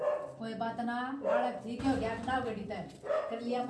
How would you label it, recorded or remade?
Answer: recorded